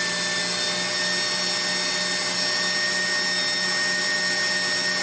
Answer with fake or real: real